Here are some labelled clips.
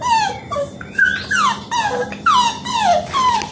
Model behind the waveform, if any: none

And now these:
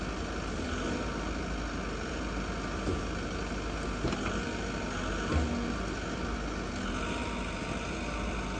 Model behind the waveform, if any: none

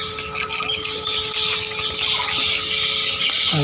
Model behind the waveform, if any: none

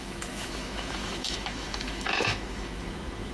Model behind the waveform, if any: autoencoder, DAC-VAE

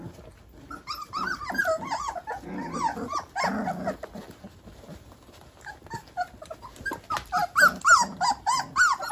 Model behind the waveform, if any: none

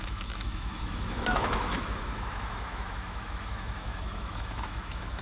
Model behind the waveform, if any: autoencoder, DAC-VAE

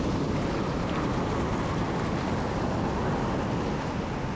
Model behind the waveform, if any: none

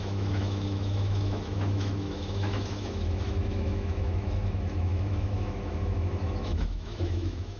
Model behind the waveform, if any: autoencoder, DAC-VAE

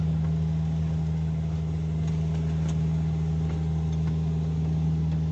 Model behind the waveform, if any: none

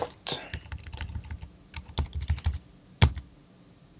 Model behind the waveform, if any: none